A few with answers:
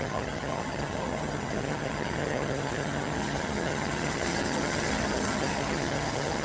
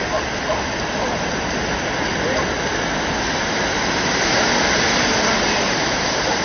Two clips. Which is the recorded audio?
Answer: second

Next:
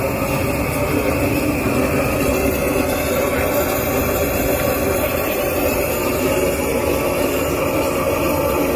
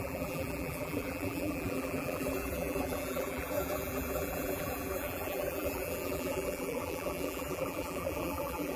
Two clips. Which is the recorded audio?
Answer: first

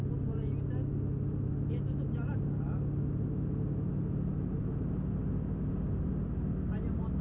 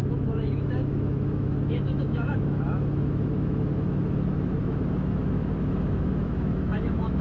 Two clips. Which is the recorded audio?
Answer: first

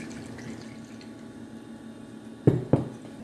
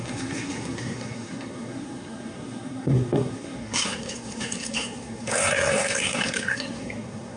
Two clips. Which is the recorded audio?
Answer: first